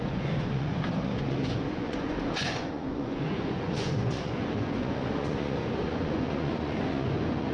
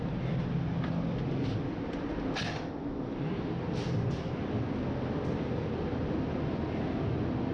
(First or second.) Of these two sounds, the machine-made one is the first